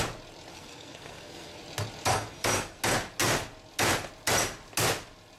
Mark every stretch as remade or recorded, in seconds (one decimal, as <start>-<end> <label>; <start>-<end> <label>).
0.0-0.5 recorded; 0.5-1.6 remade; 1.6-2.1 recorded; 2.1-2.8 remade; 2.8-5.4 recorded